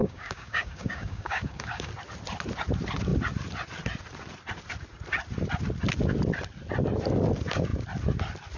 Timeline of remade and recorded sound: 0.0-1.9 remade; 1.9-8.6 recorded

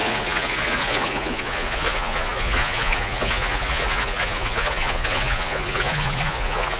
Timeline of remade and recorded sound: 0.0-6.8 remade

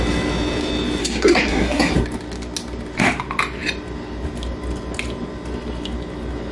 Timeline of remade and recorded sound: 0.0-1.0 recorded; 1.0-1.9 remade; 1.9-6.5 recorded

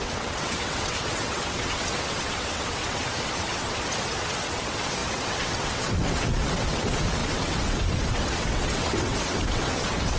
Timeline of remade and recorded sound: 0.0-10.2 remade

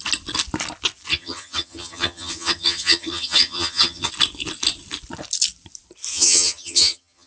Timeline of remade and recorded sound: 0.0-1.1 recorded; 1.1-4.1 remade; 4.1-6.1 recorded; 6.1-7.3 remade

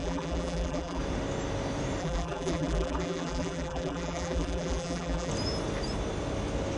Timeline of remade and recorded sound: 0.0-1.0 remade; 1.0-2.0 recorded; 2.0-5.3 remade; 5.3-6.8 recorded

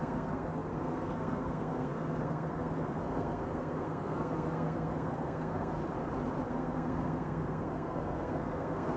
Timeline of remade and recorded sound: 0.0-5.8 remade; 5.8-6.5 recorded; 6.5-9.0 remade